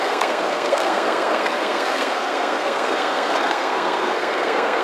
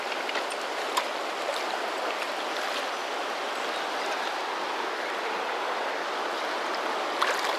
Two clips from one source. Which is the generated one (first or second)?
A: first